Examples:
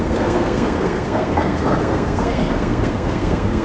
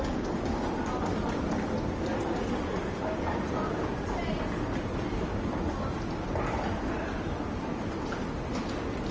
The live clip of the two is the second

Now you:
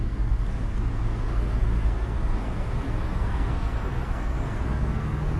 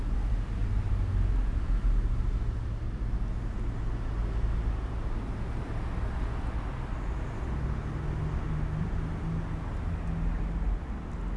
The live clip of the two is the second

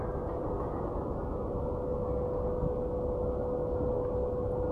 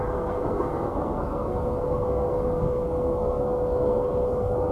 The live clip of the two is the first